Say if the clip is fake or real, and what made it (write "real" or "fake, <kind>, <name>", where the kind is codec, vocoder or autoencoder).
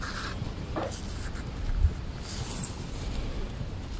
real